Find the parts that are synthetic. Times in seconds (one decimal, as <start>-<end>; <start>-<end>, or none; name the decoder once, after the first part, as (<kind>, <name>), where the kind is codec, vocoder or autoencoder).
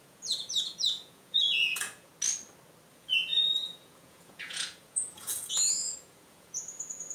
0.0-2.1 (vocoder, Vocos); 2.9-7.1